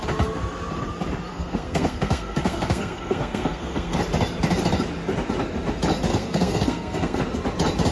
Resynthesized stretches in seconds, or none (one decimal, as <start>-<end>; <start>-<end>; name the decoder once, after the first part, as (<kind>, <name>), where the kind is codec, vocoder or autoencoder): 1.3-4.0 (codec, SNAC); 6.1-7.2